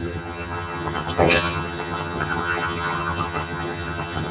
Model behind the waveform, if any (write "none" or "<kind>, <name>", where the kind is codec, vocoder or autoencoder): vocoder, HiFi-GAN